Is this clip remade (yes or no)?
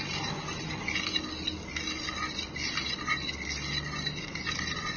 no